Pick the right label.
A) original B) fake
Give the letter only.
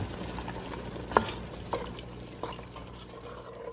A